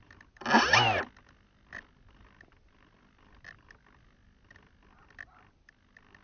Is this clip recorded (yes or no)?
yes